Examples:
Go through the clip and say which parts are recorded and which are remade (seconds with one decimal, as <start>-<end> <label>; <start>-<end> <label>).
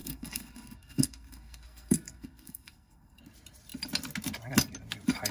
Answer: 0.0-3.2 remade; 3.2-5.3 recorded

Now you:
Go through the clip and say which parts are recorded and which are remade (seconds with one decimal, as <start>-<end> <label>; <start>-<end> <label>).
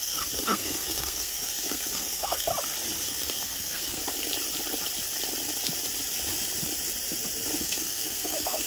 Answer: 0.0-2.5 remade; 2.5-3.0 recorded; 3.0-4.0 remade; 4.0-7.6 recorded; 7.6-8.7 remade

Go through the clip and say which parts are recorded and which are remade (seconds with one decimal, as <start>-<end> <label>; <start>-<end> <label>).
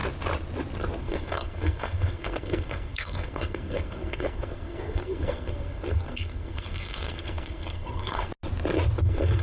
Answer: 0.0-1.0 recorded; 1.0-8.3 remade; 8.3-9.0 recorded; 9.0-9.4 remade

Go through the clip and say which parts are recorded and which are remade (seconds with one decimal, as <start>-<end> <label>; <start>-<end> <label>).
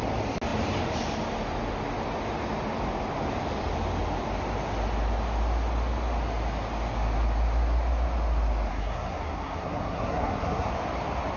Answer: 0.0-8.7 recorded; 8.7-10.7 remade; 10.7-11.4 recorded